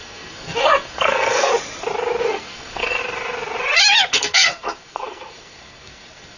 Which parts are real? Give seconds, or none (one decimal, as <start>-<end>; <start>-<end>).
1.5-2.2; 3.0-4.1